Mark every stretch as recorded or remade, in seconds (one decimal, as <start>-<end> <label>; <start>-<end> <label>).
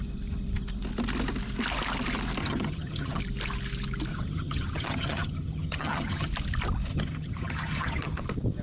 0.0-2.4 recorded; 2.4-3.2 remade; 3.2-4.1 recorded; 4.1-6.3 remade; 6.3-6.9 recorded; 6.9-8.2 remade; 8.2-8.6 recorded